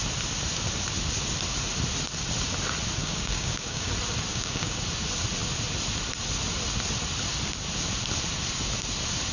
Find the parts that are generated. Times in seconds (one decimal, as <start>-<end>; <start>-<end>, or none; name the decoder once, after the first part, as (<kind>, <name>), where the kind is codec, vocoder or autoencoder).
3.0-3.9 (codec, DAC); 4.3-4.8